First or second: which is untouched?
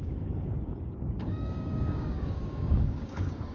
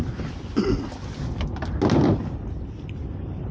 second